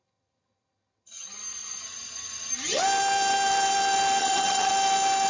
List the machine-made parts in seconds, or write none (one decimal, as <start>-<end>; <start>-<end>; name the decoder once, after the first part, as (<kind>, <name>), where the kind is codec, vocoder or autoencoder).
0.0-2.8 (vocoder, HiFi-GAN); 4.2-4.7